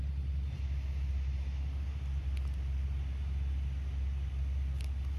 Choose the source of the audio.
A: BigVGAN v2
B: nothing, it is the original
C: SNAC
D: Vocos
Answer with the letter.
B